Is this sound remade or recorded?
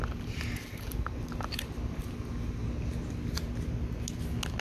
recorded